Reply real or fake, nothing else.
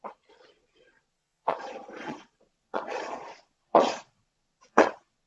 fake